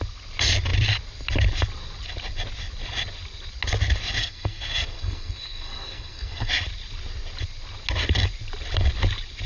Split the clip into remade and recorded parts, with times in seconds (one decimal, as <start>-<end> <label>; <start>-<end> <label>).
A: 0.0-4.2 recorded; 4.2-6.5 remade; 6.5-9.5 recorded